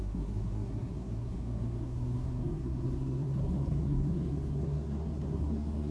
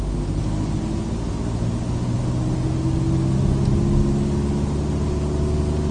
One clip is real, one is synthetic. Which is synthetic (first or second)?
first